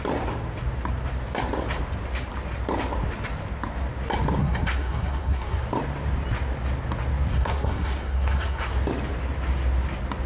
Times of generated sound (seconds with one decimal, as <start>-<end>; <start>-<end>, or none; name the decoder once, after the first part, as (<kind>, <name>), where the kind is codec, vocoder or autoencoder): 4.4-5.6 (codec, SNAC); 7.3-8.7